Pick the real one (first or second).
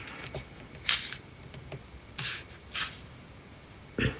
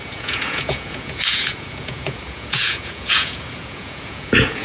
first